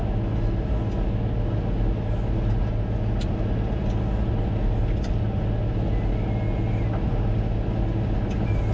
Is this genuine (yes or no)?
yes